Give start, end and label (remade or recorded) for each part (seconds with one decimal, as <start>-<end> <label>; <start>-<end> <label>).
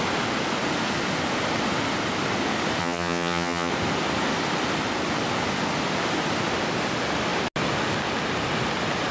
0.0-2.8 recorded; 2.8-3.7 remade; 3.7-9.1 recorded